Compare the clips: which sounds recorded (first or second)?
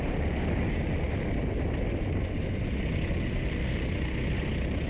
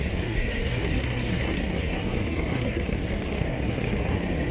first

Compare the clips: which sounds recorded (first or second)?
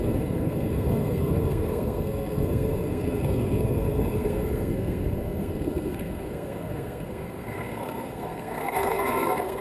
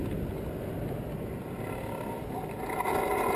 second